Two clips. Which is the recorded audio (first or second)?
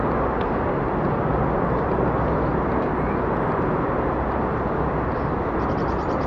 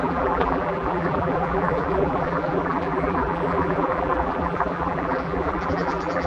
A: first